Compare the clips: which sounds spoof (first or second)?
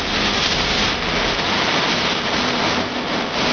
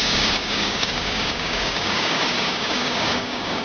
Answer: second